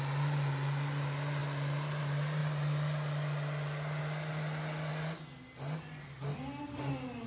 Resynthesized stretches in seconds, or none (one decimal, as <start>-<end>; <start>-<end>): none